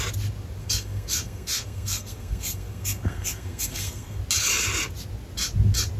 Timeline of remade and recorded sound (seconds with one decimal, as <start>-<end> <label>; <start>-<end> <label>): 0.0-0.6 recorded; 0.6-4.2 remade; 4.2-6.0 recorded